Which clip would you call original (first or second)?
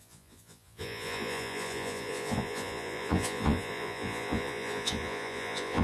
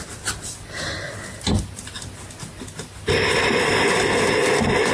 second